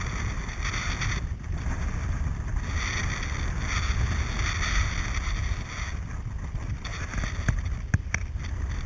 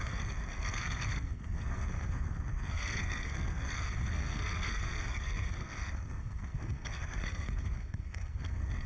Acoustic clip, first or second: first